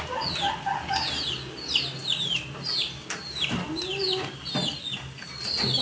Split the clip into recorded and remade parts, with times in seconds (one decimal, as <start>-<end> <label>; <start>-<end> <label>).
0.0-5.8 recorded